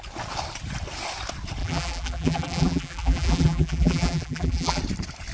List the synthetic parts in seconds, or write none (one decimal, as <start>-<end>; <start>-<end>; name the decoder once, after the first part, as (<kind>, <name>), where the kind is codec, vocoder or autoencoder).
1.6-4.8 (vocoder, BigVGAN v2)

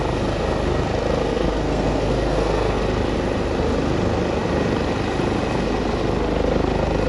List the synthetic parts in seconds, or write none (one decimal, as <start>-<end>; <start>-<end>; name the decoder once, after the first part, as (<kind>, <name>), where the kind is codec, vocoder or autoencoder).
1.2-2.8 (codec, SNAC)

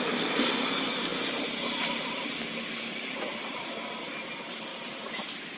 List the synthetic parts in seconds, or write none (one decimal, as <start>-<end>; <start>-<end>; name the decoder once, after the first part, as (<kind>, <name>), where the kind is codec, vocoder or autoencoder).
none